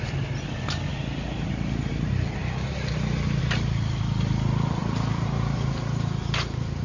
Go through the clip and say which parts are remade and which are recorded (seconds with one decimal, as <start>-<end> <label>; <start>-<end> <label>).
0.0-4.8 recorded; 4.8-6.8 remade